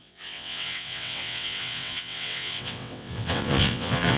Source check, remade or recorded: remade